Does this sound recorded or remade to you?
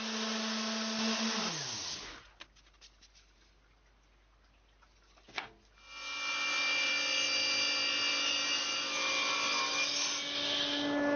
recorded